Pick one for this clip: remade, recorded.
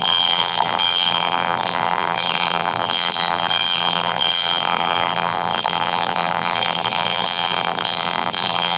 remade